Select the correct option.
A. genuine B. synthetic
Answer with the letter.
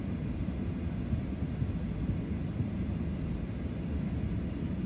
A